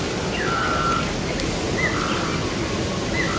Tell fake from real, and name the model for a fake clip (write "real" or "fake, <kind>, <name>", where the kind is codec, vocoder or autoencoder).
real